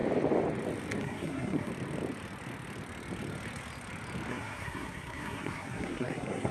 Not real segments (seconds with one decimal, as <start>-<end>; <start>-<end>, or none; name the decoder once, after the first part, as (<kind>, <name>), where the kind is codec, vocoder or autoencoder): 1.0-1.7 (codec, SNAC); 4.3-6.5